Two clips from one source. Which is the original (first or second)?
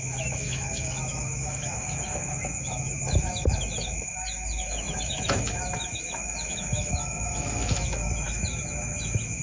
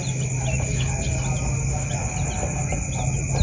second